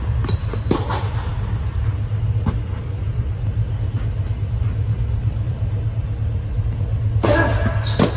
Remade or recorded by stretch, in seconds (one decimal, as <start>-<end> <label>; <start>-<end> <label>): 0.0-5.2 recorded; 5.2-5.8 remade; 5.8-8.2 recorded